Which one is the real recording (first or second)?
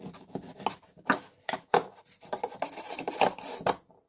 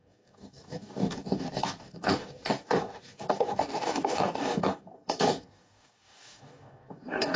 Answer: first